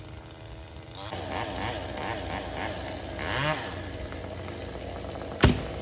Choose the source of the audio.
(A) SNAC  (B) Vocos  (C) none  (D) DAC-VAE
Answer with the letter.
C